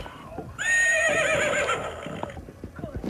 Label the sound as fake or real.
real